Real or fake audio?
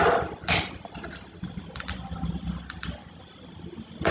real